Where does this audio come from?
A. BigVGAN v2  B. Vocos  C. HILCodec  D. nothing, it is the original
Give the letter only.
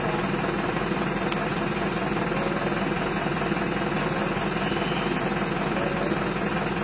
D